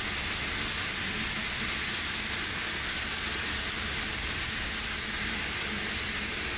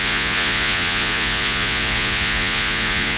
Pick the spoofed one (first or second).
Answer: second